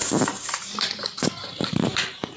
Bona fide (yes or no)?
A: no